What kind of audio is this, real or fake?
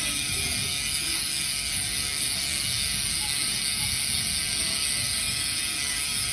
fake